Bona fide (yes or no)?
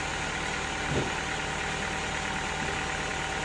yes